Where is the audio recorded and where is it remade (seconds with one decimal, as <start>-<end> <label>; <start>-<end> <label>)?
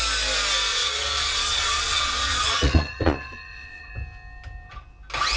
0.0-0.7 recorded; 0.7-3.9 remade; 3.9-5.4 recorded